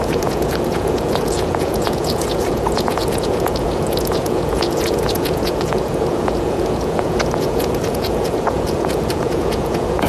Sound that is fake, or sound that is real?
fake